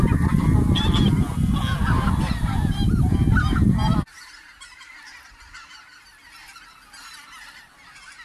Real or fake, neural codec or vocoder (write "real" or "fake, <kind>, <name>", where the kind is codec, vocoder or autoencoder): real